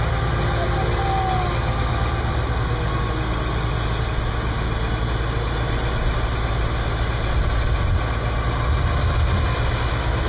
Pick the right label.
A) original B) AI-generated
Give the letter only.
A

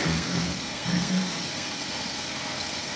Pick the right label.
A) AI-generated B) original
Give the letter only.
A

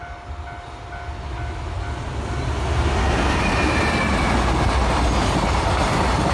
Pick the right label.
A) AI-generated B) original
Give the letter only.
B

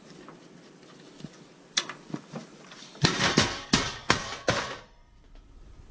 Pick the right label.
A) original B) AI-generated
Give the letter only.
B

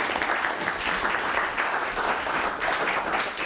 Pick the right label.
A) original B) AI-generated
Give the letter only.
A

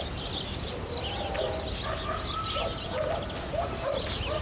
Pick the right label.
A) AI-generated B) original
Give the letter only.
B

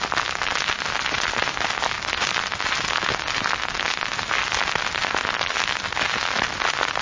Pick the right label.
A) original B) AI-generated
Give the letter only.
A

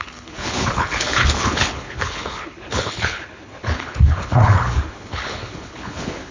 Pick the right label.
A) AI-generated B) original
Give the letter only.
A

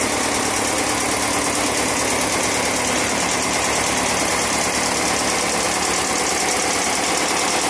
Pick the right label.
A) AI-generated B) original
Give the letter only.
B